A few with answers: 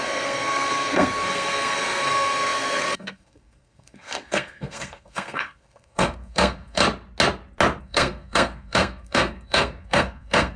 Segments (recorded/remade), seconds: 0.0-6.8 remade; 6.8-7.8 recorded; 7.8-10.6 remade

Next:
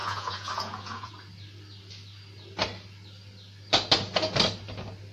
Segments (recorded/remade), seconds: 0.0-1.1 remade; 1.1-5.1 recorded

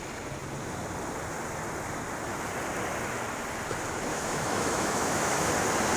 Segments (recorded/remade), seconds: 0.0-4.1 recorded; 4.1-5.5 remade; 5.5-6.0 recorded

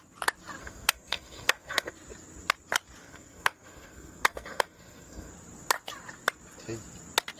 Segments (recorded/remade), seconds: 0.0-0.6 recorded; 0.6-1.9 remade; 1.9-3.0 recorded; 3.0-5.3 remade; 5.3-7.4 recorded

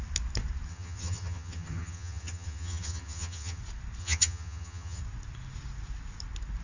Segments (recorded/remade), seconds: 0.0-0.7 recorded; 0.7-3.6 remade; 3.6-4.0 recorded; 4.0-5.0 remade; 5.0-6.6 recorded

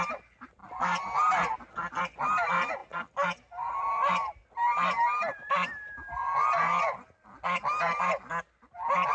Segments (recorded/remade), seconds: 0.0-9.1 recorded

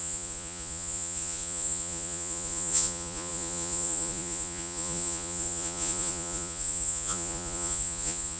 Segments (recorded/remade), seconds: 0.0-8.4 remade